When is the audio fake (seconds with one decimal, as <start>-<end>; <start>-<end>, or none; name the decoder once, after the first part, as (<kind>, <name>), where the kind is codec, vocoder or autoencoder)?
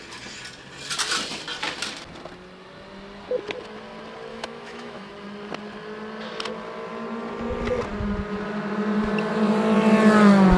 4.3-5.1 (autoencoder, DAC-VAE)